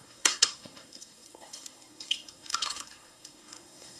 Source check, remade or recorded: remade